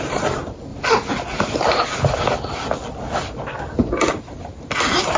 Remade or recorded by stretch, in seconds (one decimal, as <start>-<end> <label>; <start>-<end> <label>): 0.0-0.7 remade; 0.7-3.8 recorded; 3.8-5.2 remade